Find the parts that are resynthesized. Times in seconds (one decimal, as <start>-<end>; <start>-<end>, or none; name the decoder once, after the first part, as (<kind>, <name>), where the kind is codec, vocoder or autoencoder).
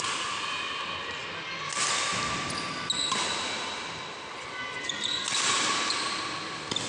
none